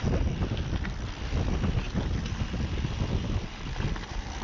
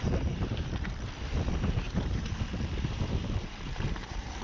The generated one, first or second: second